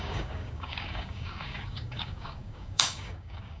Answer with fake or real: fake